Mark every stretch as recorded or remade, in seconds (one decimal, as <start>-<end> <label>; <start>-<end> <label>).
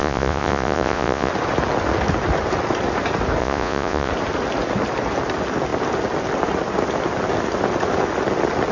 0.0-1.3 remade; 1.3-3.4 recorded; 3.4-4.1 remade; 4.1-8.7 recorded